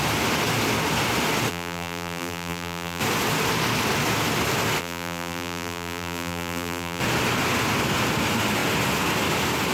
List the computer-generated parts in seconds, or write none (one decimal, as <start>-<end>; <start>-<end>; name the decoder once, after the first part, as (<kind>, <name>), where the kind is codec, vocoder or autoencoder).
1.5-3.0 (vocoder, BigVGAN v2); 4.8-7.0